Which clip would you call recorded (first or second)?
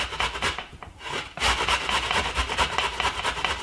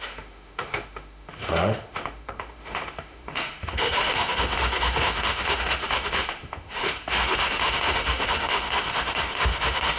first